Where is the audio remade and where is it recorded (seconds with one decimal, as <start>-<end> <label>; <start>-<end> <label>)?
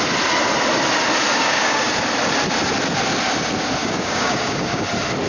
0.0-1.3 recorded; 1.3-1.9 remade; 1.9-3.8 recorded; 3.8-4.8 remade; 4.8-5.3 recorded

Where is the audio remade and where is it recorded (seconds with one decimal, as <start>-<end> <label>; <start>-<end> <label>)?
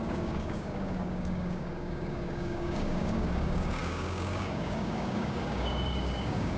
0.0-6.6 remade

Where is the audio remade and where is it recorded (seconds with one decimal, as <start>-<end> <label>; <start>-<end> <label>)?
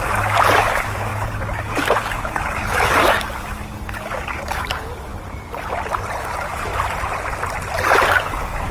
0.0-5.1 remade; 5.1-6.2 recorded; 6.2-6.7 remade; 6.7-8.1 recorded; 8.1-8.7 remade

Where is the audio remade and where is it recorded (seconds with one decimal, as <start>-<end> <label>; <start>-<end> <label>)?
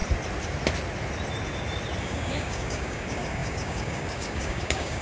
0.0-2.0 recorded; 2.0-5.0 remade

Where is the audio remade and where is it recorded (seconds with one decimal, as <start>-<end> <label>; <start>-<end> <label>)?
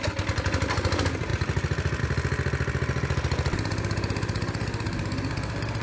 0.0-5.8 recorded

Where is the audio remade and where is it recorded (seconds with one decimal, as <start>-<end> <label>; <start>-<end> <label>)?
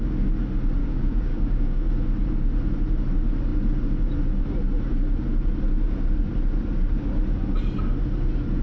0.0-0.8 recorded; 0.8-1.9 remade; 1.9-8.6 recorded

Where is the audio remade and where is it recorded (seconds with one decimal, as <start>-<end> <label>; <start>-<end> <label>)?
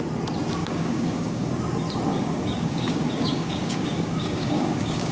0.0-0.6 recorded; 0.6-1.6 remade; 1.6-2.1 recorded; 2.1-5.1 remade